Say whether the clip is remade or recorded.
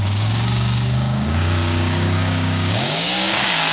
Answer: remade